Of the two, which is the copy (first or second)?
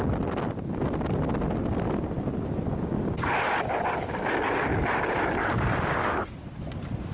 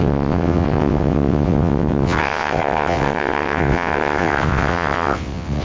second